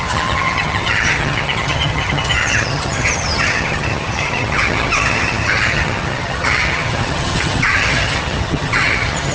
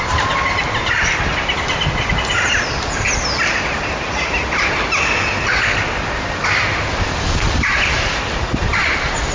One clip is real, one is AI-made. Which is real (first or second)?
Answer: second